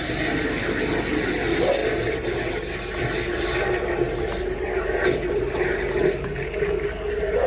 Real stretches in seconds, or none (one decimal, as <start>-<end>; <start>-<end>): 0.0-7.5